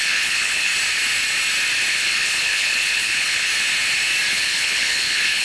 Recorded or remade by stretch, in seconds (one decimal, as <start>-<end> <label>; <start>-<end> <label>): 0.0-0.7 remade; 0.7-1.9 recorded; 1.9-3.5 remade; 3.5-4.3 recorded; 4.3-5.4 remade